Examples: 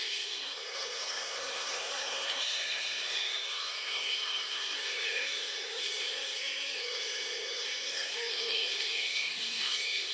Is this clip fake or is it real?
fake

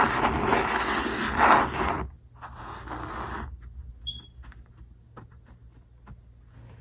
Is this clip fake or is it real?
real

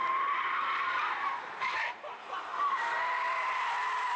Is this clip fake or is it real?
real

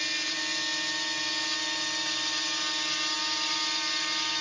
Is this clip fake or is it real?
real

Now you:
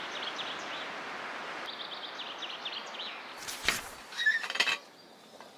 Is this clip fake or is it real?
real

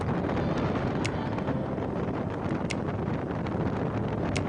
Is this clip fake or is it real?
real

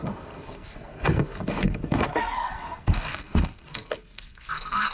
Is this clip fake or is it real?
fake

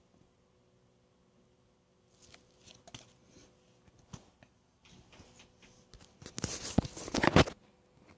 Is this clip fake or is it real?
real